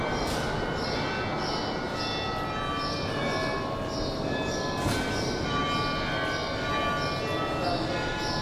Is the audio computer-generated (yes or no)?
no